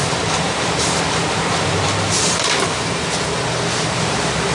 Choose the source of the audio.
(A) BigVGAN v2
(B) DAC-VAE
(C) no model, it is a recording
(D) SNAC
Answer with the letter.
A